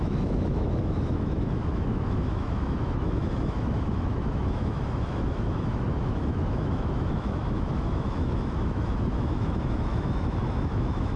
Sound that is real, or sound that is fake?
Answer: fake